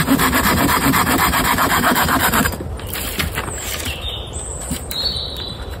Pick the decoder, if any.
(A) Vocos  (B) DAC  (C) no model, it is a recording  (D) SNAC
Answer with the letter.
C